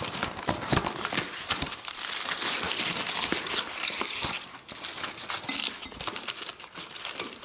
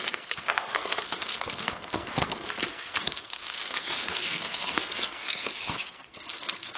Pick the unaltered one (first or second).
first